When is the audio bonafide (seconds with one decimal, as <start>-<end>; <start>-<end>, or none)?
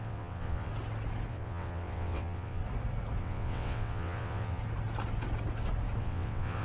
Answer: 0.7-1.3; 2.6-3.2; 4.6-6.0